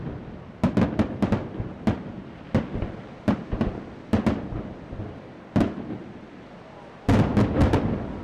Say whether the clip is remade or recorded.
recorded